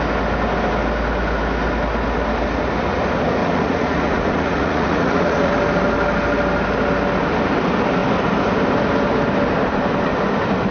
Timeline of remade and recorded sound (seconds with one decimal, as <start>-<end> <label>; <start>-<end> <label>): 0.0-3.4 recorded; 3.4-5.5 remade; 5.5-10.7 recorded